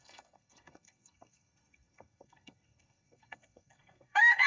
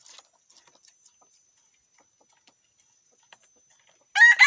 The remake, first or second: first